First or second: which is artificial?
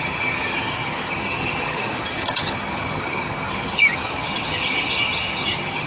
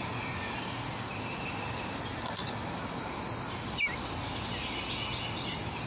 first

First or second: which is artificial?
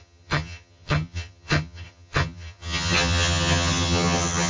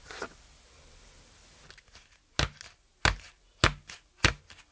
first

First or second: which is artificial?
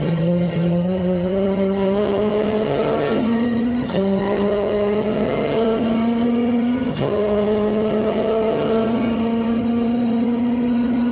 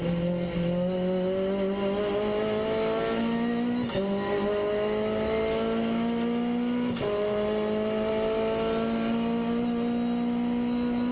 first